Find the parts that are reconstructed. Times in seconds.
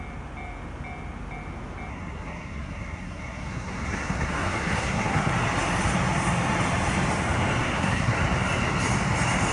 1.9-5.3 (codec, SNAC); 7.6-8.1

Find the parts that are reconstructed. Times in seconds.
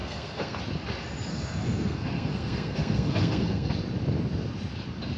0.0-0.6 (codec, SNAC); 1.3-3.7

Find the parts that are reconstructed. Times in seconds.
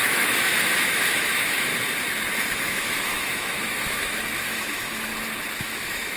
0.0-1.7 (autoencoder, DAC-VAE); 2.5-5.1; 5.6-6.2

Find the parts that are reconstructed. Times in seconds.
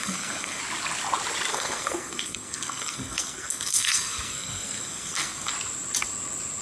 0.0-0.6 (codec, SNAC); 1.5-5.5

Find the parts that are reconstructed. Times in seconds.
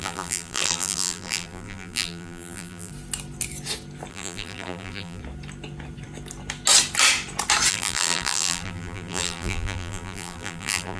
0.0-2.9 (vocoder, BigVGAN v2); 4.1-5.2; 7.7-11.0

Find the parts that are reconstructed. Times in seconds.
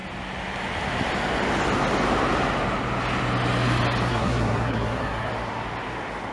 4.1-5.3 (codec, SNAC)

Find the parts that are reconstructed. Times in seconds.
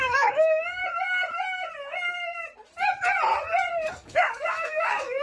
0.0-0.8 (codec, DAC); 3.9-5.2